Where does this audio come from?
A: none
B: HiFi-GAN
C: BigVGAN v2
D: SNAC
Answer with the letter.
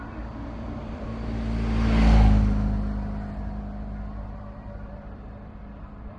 C